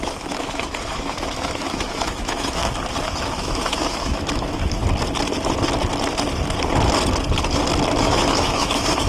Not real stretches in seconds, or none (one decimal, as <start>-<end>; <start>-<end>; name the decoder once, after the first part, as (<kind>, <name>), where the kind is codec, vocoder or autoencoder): 0.0-2.6 (autoencoder, DAC-VAE); 3.3-4.8; 8.0-9.1